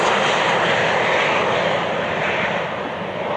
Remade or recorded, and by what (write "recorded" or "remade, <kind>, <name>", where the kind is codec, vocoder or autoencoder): remade, vocoder, BigVGAN v2